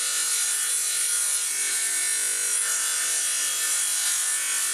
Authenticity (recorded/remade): recorded